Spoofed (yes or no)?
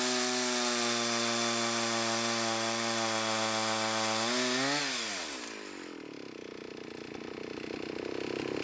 no